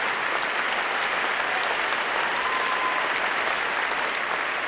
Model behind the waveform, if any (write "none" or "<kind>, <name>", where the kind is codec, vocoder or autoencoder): none